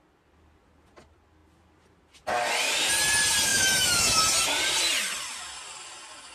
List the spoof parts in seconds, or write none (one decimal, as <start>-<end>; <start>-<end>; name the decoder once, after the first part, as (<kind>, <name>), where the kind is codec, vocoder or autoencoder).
3.5-4.2 (autoencoder, DAC-VAE)